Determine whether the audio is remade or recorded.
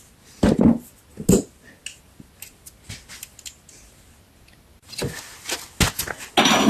recorded